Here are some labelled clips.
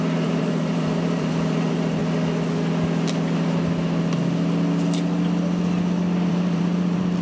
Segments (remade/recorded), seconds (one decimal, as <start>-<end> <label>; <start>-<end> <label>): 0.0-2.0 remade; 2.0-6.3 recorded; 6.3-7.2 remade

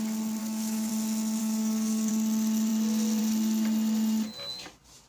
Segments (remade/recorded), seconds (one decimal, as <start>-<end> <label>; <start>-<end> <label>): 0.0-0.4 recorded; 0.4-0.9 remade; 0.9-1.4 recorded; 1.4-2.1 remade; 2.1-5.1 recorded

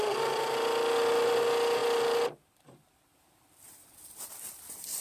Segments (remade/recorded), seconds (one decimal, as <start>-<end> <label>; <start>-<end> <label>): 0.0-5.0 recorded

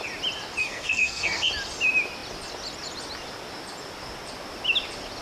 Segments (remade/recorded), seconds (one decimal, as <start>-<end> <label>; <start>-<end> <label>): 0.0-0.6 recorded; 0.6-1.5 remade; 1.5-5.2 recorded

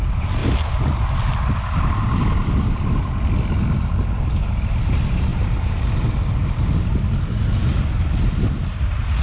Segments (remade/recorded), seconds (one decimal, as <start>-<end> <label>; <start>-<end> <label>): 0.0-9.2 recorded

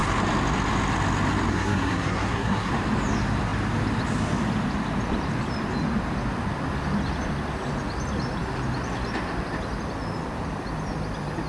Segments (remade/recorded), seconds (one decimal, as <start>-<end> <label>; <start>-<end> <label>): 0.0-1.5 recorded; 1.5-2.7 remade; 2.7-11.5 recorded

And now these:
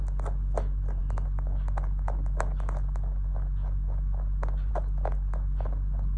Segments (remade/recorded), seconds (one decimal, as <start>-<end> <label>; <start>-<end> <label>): 0.0-6.2 recorded

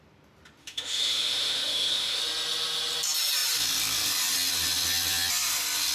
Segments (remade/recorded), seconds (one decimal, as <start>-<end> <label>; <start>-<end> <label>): 0.0-0.6 recorded; 0.6-2.2 remade; 2.2-5.9 recorded